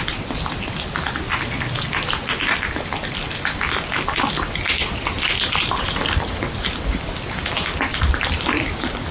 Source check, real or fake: real